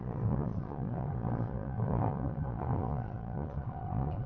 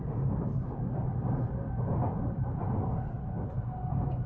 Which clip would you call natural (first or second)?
second